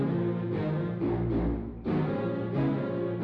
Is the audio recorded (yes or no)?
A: yes